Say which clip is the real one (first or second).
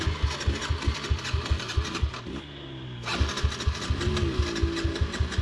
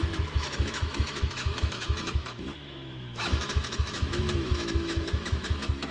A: first